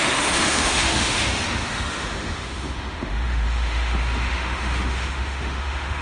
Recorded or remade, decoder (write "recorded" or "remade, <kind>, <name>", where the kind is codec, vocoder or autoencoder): remade, autoencoder, DAC-VAE